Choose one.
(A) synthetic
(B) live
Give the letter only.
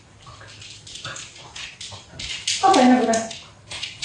B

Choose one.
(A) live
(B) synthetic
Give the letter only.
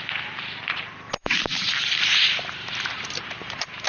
B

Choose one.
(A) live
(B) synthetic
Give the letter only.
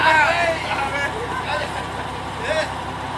A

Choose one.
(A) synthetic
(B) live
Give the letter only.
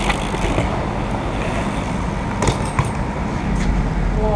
B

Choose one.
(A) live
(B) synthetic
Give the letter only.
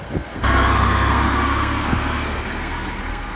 B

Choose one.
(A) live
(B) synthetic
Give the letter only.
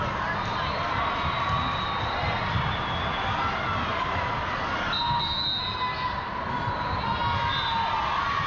A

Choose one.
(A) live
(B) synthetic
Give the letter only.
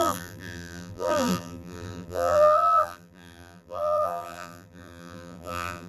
B